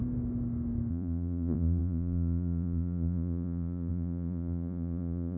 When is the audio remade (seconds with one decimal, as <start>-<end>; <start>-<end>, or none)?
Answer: 0.9-5.4